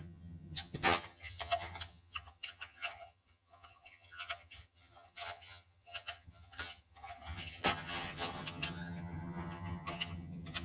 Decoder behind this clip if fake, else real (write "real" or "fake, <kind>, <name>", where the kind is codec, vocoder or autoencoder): fake, vocoder, HiFi-GAN